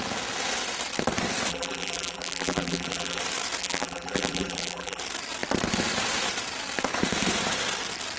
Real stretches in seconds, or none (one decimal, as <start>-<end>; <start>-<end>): 0.0-1.5; 3.2-3.6; 5.0-8.2